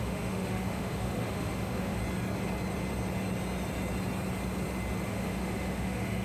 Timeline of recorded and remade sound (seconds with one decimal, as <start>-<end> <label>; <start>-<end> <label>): 0.0-2.0 remade; 2.0-5.1 recorded; 5.1-6.2 remade